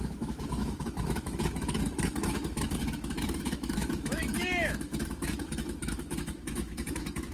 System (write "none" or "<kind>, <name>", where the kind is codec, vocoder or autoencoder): autoencoder, DAC-VAE